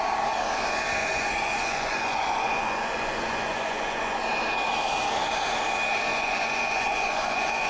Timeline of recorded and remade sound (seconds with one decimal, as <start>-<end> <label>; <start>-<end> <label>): 0.0-1.0 recorded; 1.0-4.2 remade; 4.2-6.1 recorded; 6.1-7.7 remade